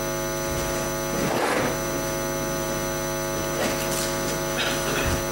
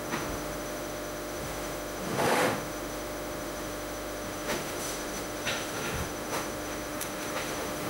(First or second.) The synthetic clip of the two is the second